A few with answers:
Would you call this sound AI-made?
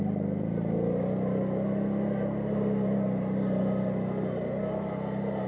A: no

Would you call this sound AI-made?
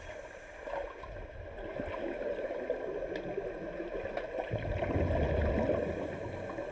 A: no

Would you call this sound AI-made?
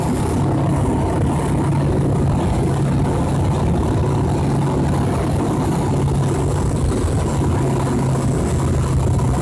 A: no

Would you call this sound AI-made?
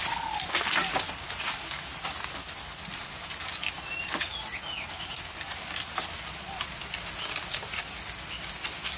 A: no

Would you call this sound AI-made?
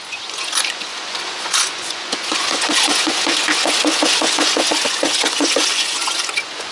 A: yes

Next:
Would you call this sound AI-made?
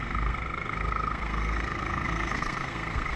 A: yes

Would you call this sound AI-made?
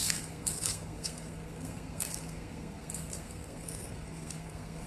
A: yes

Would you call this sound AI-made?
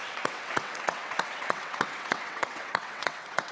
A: yes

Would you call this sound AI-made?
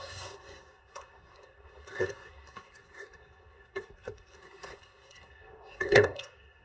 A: yes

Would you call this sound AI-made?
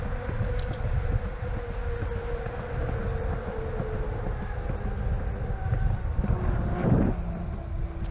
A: no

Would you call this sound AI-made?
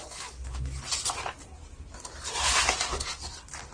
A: no